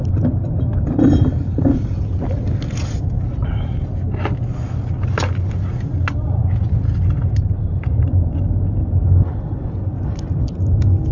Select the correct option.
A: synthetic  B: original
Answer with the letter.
B